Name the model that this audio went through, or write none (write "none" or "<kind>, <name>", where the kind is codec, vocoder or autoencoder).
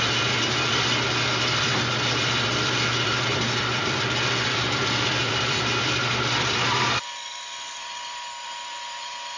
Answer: vocoder, BigVGAN v2